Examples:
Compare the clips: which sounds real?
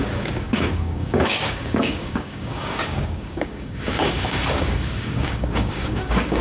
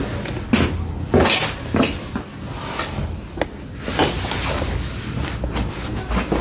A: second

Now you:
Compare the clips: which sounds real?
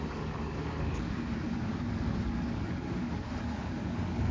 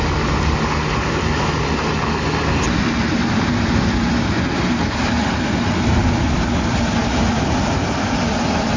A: second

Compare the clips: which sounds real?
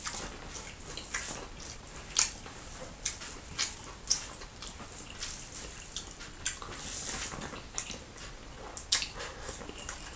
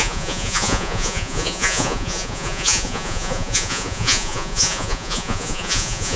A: first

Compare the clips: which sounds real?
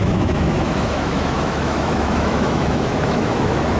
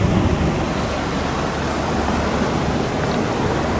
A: second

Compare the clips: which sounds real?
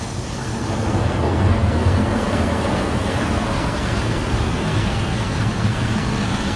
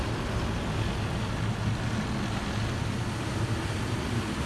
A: second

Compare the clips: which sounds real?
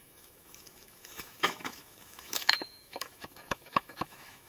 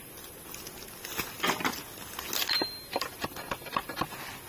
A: second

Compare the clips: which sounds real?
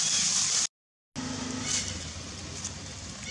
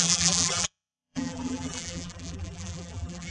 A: first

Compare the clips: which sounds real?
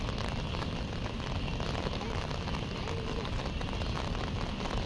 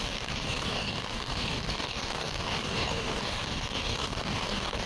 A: first